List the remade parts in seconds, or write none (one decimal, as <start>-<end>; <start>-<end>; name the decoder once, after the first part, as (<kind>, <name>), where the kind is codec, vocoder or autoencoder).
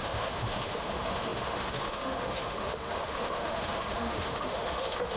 0.0-5.2 (autoencoder, DAC-VAE)